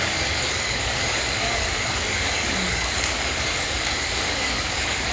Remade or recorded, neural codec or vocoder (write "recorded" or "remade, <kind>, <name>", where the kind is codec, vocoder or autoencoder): remade, codec, DAC